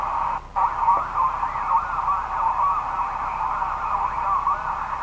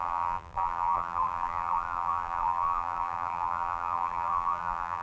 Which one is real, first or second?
first